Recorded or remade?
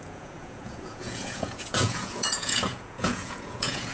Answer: remade